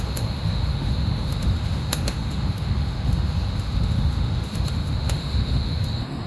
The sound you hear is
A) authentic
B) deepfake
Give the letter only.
B